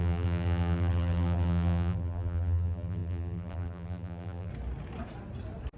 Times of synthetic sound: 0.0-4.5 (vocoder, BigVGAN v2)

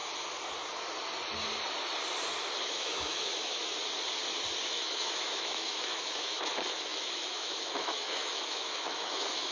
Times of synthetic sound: 2.6-3.6 (autoencoder, DAC-VAE); 4.6-9.5

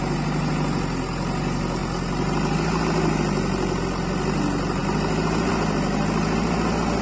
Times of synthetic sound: none

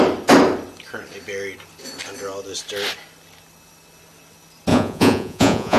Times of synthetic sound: 4.7-5.8 (vocoder, Vocos)

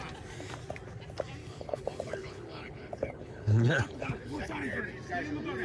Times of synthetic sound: 1.4-4.8 (codec, HILCodec)

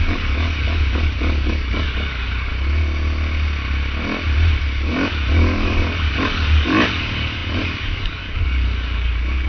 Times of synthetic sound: 0.0-2.5 (codec, DAC); 4.6-9.5

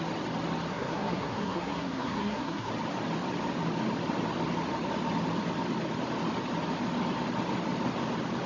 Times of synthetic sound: 0.7-2.7 (codec, SNAC)

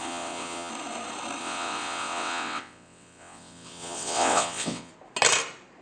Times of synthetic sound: 0.0-0.7 (vocoder, WaveNeXt); 1.4-4.9